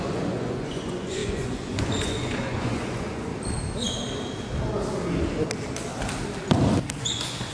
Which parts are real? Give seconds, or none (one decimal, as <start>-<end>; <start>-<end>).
3.3-7.0